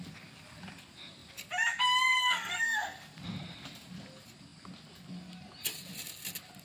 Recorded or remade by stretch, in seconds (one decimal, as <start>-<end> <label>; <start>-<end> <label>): 0.0-2.2 recorded; 2.2-3.0 remade; 3.0-6.6 recorded